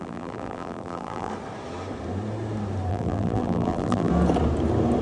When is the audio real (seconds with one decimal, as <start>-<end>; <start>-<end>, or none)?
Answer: 1.3-2.9; 4.1-5.0